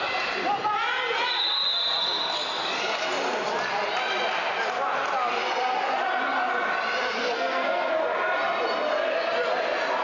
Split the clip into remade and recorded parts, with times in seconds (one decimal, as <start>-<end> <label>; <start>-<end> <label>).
0.0-7.2 recorded; 7.2-7.9 remade; 7.9-10.0 recorded